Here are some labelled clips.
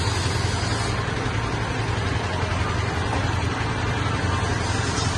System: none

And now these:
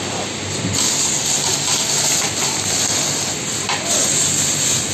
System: none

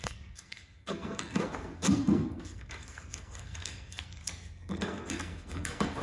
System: codec, SNAC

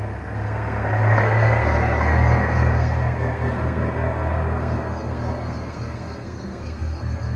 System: codec, SNAC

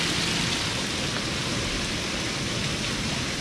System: none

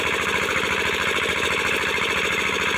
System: none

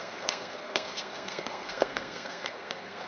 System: codec, SNAC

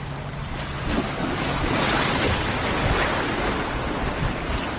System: none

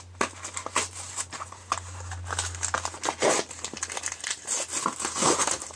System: none